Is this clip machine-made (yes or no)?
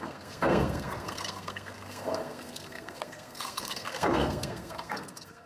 yes